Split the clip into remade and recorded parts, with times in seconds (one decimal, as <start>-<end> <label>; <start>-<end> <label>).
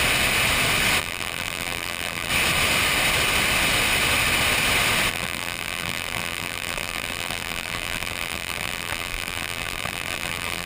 0.0-1.0 recorded; 1.0-2.3 remade; 2.3-5.1 recorded; 5.1-10.7 remade